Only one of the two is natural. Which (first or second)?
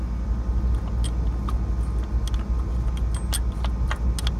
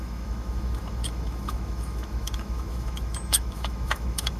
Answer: first